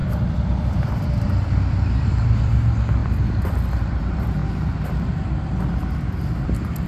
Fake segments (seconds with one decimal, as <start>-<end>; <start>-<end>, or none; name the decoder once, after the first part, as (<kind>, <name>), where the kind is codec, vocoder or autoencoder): 0.0-4.4 (vocoder, BigVGAN v2); 4.9-6.9